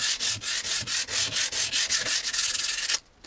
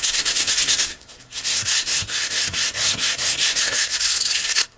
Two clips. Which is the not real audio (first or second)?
second